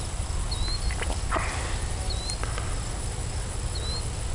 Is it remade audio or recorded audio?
recorded